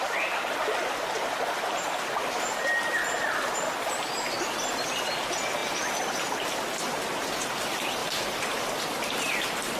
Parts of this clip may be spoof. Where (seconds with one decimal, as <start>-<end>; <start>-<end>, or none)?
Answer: none